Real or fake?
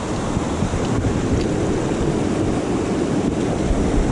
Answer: real